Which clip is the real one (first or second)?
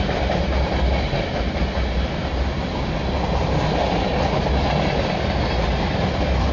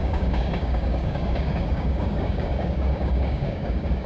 first